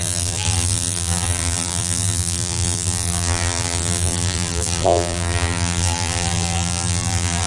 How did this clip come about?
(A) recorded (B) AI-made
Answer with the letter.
B